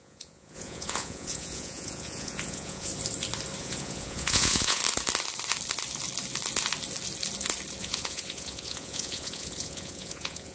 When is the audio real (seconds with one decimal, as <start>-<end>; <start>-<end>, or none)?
2.9-3.6; 4.8-7.8

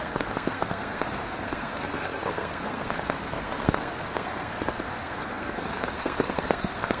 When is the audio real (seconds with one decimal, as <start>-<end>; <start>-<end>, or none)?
none

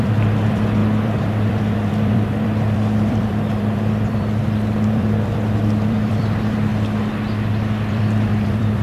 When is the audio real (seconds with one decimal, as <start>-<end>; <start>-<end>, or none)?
6.7-7.5

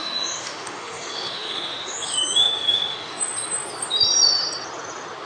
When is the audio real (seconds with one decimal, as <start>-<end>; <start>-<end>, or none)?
3.2-5.3

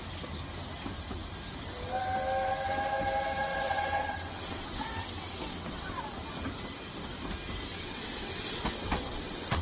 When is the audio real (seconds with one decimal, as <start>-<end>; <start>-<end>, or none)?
0.0-3.5; 6.0-7.7